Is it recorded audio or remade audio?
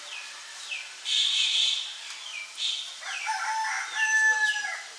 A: recorded